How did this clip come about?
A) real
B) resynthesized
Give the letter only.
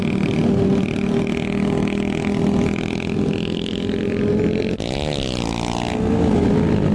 A